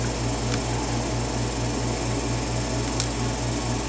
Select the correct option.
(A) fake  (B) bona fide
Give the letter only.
B